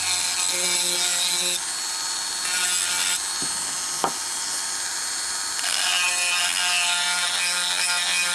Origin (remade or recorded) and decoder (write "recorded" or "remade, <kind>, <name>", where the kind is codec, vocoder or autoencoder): recorded